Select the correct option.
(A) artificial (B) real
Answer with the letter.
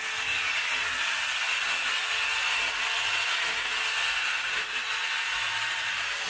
B